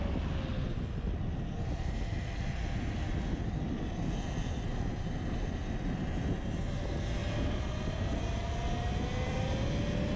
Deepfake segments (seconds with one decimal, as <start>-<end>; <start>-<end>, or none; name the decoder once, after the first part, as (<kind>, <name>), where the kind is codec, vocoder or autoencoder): none